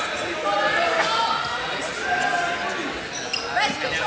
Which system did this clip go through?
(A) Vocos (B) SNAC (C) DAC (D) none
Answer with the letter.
D